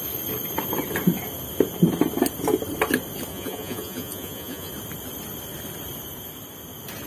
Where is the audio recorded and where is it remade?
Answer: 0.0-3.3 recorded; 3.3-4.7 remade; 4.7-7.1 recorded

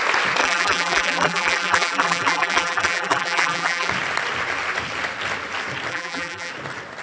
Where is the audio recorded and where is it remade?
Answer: 0.0-0.4 recorded; 0.4-3.9 remade; 3.9-5.9 recorded; 5.9-6.5 remade; 6.5-7.0 recorded

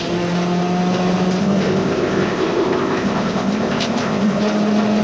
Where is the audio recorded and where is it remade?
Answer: 0.0-1.4 recorded; 1.4-4.4 remade; 4.4-5.0 recorded

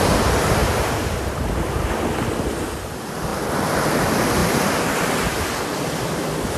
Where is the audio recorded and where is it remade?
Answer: 0.0-4.4 recorded; 4.4-6.6 remade